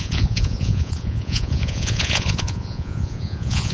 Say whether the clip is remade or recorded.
remade